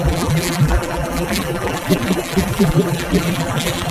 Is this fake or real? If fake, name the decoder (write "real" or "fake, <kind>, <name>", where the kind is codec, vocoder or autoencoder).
fake, vocoder, BigVGAN v2